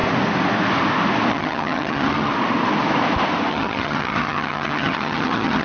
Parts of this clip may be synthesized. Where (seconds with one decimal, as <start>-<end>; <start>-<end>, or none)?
1.3-2.3; 3.5-5.6

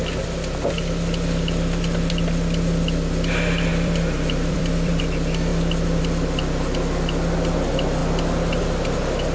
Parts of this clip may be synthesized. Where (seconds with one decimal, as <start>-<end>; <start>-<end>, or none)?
3.7-5.0

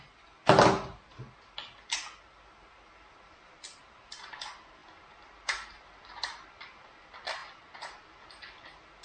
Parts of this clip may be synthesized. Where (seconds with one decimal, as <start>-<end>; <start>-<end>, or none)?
none

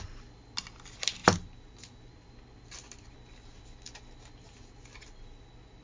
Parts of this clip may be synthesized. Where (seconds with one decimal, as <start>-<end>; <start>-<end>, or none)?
none

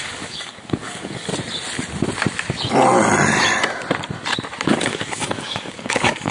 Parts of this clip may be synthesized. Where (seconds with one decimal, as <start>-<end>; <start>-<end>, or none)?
0.0-1.3; 4.7-6.3